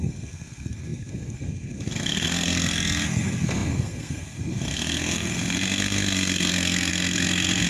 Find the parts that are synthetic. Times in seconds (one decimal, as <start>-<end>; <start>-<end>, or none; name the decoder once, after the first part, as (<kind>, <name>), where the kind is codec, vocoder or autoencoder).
0.0-7.7 (codec, SNAC)